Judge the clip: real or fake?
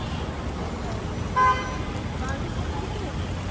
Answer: real